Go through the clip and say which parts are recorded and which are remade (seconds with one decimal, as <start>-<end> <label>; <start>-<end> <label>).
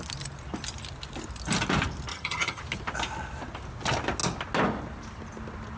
0.0-2.1 recorded; 2.1-2.6 remade; 2.6-5.8 recorded